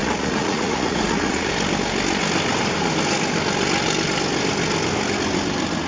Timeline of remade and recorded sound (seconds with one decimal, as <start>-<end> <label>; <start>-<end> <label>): 0.0-1.5 remade; 1.5-5.9 recorded